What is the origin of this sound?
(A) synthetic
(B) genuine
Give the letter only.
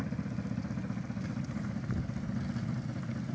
B